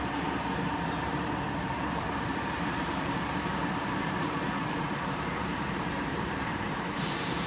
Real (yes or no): no